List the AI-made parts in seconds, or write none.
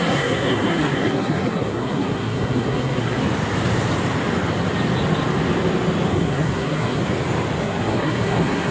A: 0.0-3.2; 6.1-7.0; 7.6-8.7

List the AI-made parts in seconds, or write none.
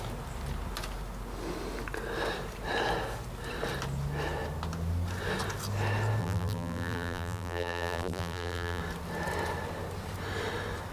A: 6.2-8.8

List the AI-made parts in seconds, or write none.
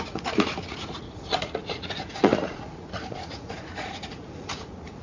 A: 0.0-5.0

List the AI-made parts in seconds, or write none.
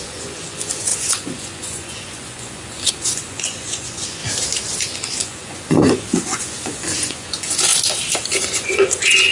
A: 0.0-4.2; 4.8-7.7; 8.4-9.3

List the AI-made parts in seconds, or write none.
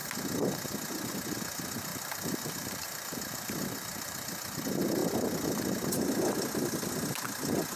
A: 1.9-4.6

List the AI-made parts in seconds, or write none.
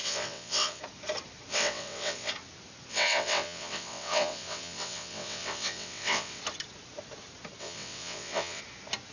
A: 0.0-0.8; 1.5-2.3; 2.9-6.4; 7.6-8.6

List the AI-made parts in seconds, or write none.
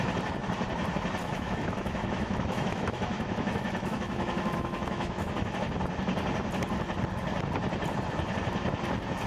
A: 1.2-5.6